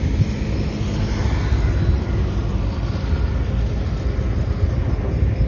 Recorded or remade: recorded